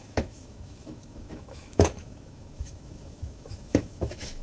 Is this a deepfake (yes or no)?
yes